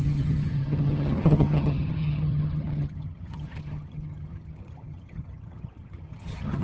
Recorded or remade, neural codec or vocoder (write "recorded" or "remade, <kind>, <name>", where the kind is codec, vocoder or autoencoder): remade, vocoder, HiFi-GAN